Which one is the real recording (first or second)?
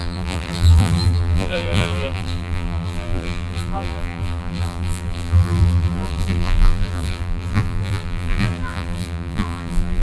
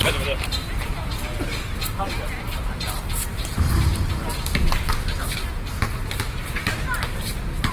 second